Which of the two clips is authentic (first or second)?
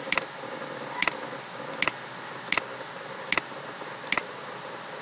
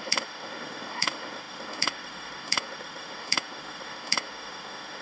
first